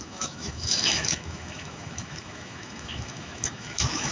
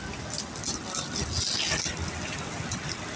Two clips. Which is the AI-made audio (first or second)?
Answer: first